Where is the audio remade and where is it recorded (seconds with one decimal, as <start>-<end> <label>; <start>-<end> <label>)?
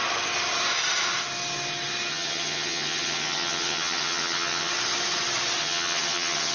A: 0.0-2.1 recorded; 2.1-4.7 remade; 4.7-5.6 recorded; 5.6-6.5 remade